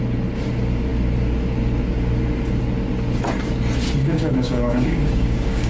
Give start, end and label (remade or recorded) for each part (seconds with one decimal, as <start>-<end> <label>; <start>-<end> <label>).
0.0-4.0 recorded; 4.0-5.7 remade